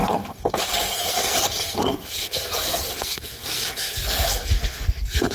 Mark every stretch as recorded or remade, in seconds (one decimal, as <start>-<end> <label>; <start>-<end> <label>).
0.0-5.3 remade